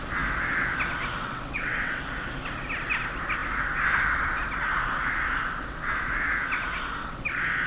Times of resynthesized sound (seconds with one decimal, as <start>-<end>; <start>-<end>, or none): 1.2-2.0